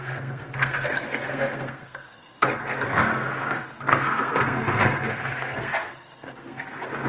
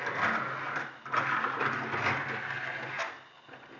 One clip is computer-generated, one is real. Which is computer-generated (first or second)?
first